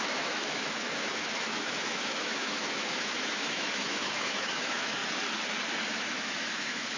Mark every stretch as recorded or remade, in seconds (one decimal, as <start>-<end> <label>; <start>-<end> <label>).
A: 0.0-5.0 remade; 5.0-5.9 recorded; 5.9-7.0 remade